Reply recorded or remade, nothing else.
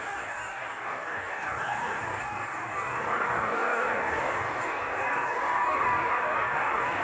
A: remade